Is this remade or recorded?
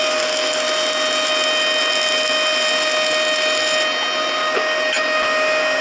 recorded